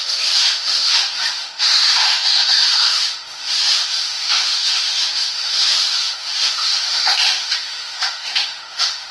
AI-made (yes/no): yes